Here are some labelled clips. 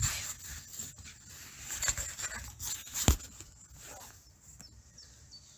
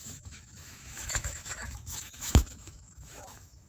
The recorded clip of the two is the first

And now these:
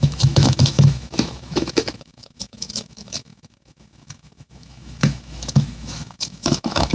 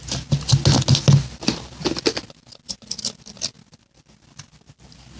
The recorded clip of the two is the second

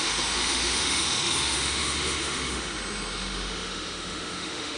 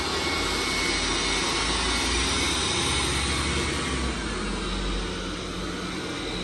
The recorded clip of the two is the second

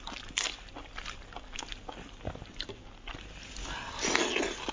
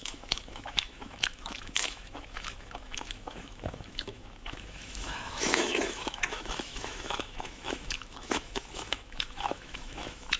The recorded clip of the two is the first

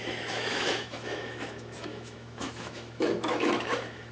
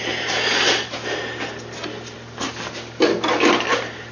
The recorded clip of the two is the second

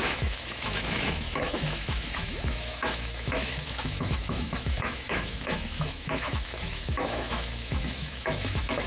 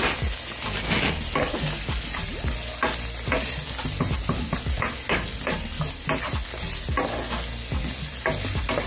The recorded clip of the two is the second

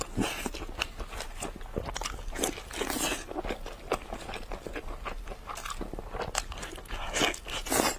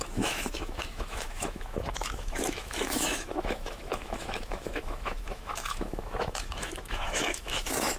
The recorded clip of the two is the first